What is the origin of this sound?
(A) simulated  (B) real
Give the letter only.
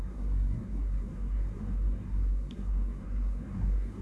A